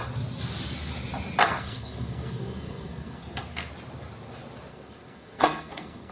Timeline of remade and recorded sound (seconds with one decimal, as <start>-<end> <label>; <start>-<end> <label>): 0.0-1.4 recorded; 1.4-3.7 remade; 3.7-4.7 recorded; 4.7-6.1 remade